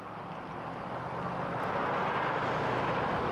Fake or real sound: real